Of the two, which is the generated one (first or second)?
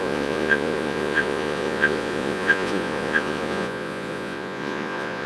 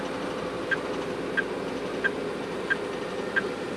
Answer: first